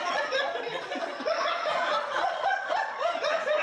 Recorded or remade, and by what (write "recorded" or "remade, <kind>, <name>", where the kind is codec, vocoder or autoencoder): remade, vocoder, Vocos